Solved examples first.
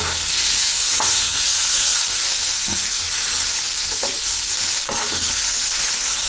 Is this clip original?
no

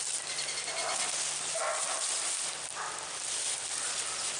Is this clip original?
yes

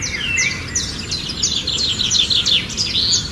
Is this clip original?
yes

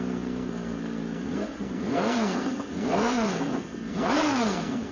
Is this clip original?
no